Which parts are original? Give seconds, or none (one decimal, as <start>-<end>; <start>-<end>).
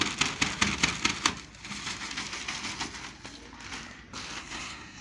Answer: 0.0-4.4